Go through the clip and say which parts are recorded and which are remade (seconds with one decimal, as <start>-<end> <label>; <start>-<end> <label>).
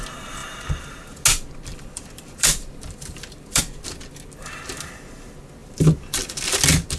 0.0-0.4 recorded; 0.4-1.0 remade; 1.0-1.7 recorded; 1.7-3.6 remade; 3.6-5.6 recorded; 5.6-6.5 remade; 6.5-7.0 recorded